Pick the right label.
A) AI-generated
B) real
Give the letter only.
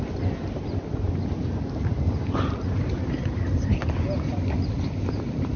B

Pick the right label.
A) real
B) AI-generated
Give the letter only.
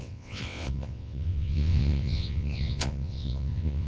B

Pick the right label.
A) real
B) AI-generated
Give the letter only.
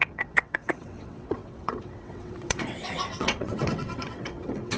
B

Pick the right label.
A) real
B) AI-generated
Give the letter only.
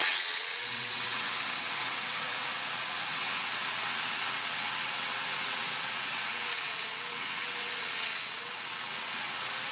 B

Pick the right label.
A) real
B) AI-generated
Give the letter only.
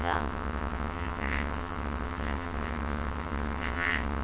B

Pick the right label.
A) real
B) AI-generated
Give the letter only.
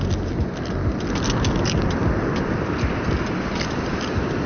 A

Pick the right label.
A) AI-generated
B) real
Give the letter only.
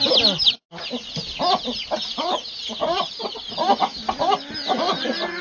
B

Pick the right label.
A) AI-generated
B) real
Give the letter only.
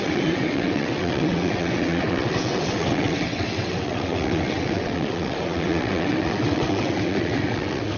A